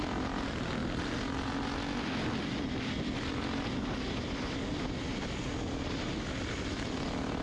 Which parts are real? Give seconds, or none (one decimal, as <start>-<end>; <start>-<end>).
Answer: 0.0-7.4